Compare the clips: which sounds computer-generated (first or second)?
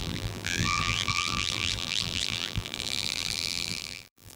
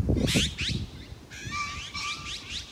first